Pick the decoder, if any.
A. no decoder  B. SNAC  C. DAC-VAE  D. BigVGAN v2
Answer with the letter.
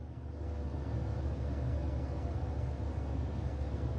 B